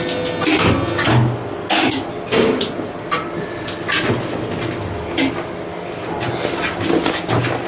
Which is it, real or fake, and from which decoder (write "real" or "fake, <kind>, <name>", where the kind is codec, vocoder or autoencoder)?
real